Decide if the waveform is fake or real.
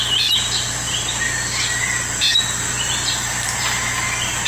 real